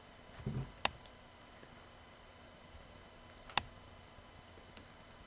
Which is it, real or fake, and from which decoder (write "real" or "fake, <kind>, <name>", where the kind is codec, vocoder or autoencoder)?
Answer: real